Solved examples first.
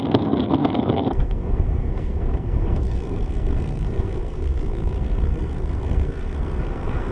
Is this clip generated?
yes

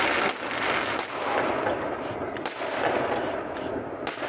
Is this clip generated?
no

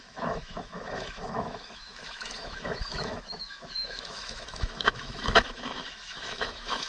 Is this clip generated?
yes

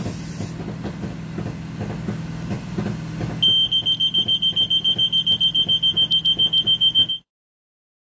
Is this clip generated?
no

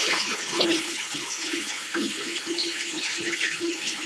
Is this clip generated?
yes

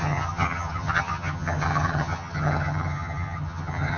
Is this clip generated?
yes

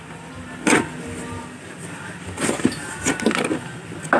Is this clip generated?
no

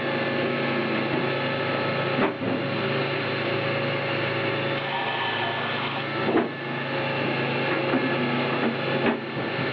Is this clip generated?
no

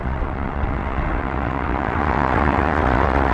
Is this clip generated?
yes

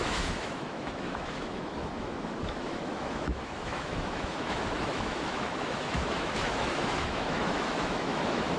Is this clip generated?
yes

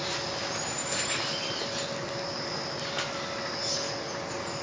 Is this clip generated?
no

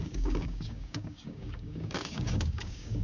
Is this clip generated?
yes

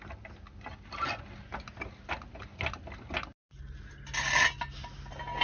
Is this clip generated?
no